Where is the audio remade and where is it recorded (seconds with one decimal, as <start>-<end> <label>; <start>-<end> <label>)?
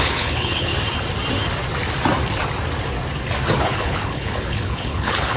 0.0-0.7 remade; 0.7-3.6 recorded; 3.6-5.4 remade